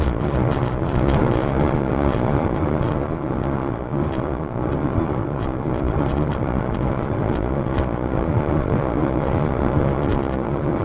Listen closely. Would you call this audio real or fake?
fake